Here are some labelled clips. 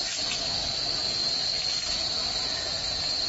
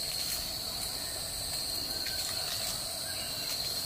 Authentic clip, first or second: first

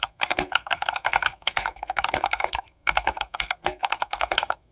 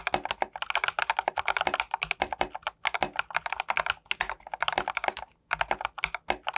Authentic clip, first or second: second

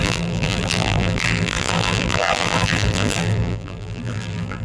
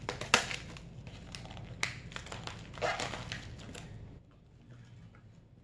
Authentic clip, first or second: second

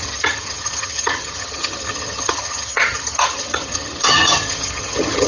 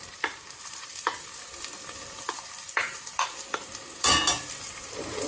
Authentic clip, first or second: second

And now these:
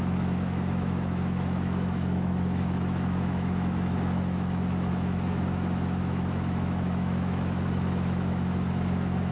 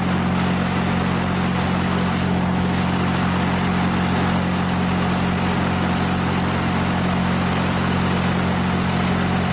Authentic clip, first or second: second